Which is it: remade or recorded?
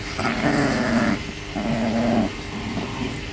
recorded